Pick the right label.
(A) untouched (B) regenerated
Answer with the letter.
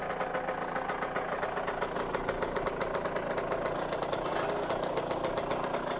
A